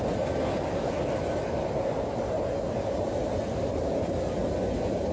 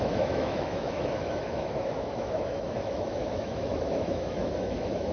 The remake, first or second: second